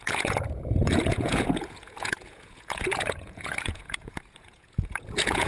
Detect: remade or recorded remade